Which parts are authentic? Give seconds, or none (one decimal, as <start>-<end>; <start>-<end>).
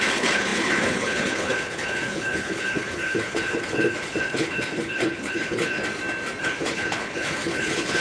5.8-6.4